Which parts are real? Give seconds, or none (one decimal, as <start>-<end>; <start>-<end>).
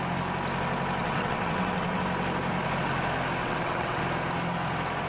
0.0-1.0; 2.0-3.4; 4.0-5.1